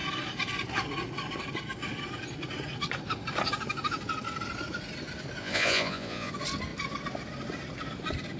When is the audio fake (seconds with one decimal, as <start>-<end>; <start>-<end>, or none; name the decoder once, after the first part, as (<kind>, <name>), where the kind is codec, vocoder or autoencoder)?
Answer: 5.4-6.3 (vocoder, Vocos)